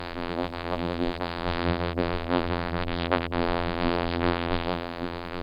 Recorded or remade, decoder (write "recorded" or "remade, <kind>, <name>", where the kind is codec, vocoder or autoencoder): remade, vocoder, BigVGAN v2